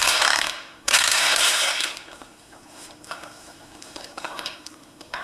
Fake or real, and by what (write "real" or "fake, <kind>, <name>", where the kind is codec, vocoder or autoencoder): fake, codec, SNAC